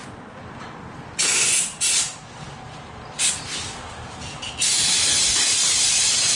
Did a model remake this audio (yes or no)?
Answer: no